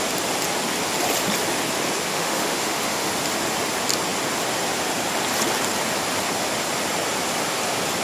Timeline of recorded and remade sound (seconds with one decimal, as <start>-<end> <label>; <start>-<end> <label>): 0.0-2.1 recorded; 2.1-3.1 remade; 3.1-8.0 recorded